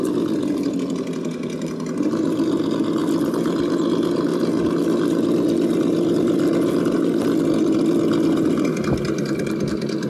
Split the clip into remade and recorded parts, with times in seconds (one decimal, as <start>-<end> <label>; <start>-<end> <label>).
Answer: 0.0-10.1 recorded

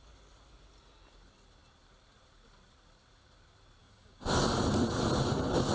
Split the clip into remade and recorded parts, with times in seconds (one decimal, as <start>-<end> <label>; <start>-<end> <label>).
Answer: 0.0-3.8 recorded; 3.8-4.3 remade; 4.3-5.7 recorded

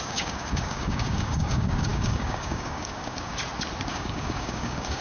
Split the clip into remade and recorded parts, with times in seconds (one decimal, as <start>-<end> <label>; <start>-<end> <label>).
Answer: 0.0-3.3 remade; 3.3-3.9 recorded; 3.9-5.0 remade